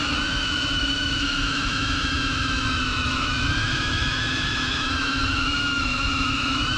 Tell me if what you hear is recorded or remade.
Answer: remade